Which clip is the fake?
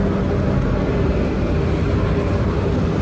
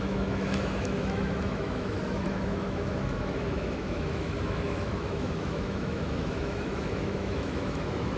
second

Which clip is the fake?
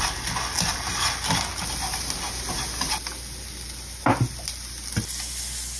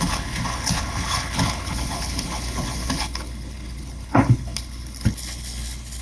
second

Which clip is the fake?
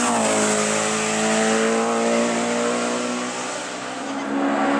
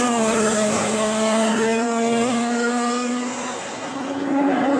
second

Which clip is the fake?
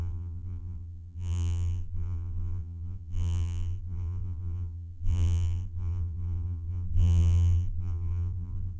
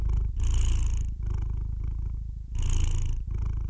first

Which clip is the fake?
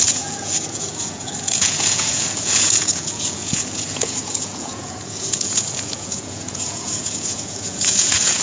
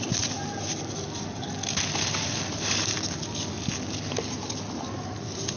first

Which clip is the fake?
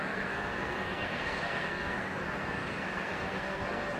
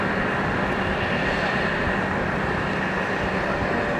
first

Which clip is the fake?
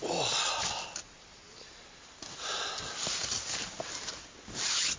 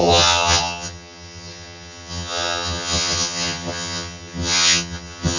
second